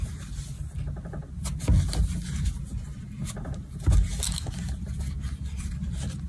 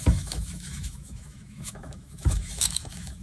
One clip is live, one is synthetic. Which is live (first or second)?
first